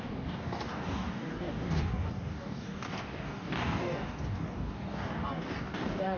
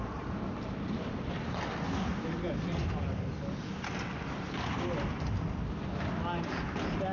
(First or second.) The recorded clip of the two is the second